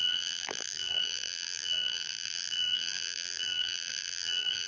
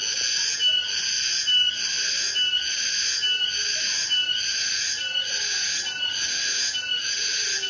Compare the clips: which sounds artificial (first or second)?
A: first